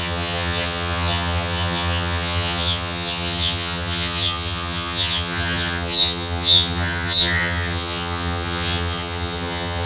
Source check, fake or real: fake